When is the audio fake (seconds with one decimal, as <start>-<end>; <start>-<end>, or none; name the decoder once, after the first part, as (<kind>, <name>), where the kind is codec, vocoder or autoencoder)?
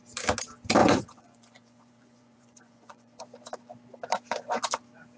0.8-3.2 (vocoder, Vocos)